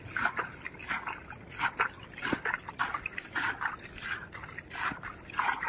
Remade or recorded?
recorded